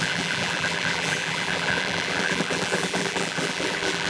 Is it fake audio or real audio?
fake